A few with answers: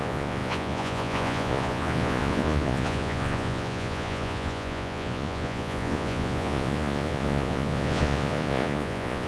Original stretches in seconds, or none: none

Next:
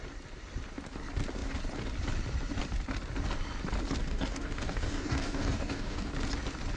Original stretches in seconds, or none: 0.0-4.0; 6.1-6.8

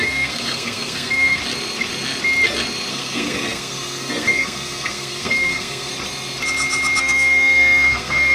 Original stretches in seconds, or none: 1.4-2.9; 5.9-7.0

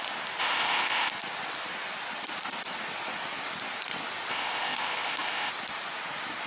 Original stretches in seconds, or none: 0.0-0.4; 1.1-4.3; 5.5-6.5

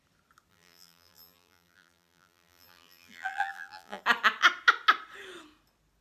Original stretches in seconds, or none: 0.0-0.5; 4.0-6.0